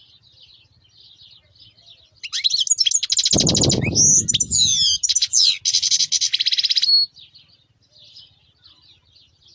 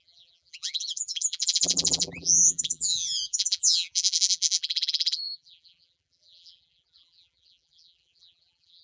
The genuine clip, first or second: first